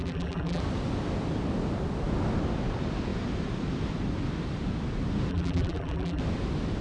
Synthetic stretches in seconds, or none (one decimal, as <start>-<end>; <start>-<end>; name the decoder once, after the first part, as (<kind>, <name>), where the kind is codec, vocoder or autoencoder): 0.0-0.6 (vocoder, BigVGAN v2); 5.3-6.2